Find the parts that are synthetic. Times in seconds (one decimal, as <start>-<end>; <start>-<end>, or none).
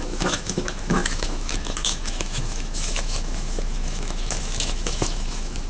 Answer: 0.0-5.7